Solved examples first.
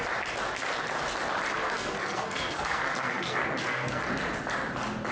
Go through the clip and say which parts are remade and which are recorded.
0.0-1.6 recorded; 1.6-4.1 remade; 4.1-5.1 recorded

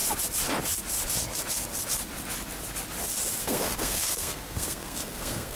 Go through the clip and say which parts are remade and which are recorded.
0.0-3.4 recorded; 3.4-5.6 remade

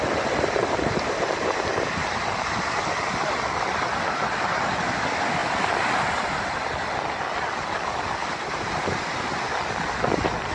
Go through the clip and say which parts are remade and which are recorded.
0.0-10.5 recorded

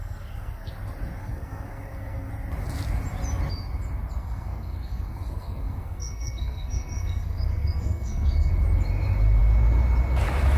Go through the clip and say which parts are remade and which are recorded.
0.0-0.7 remade; 0.7-1.2 recorded; 1.2-2.3 remade; 2.3-4.2 recorded; 4.2-8.5 remade; 8.5-10.6 recorded

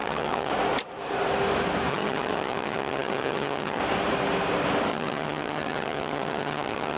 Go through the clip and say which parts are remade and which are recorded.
0.0-0.5 remade; 0.5-1.9 recorded; 1.9-3.8 remade; 3.8-4.9 recorded; 4.9-7.0 remade

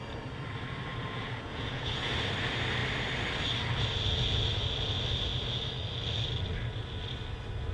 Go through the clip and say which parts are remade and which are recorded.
0.0-0.9 recorded; 0.9-2.1 remade; 2.1-7.7 recorded

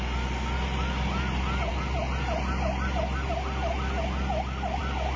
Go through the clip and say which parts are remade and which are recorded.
0.0-5.2 recorded